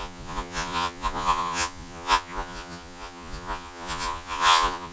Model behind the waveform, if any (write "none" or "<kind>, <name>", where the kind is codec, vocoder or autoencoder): vocoder, Vocos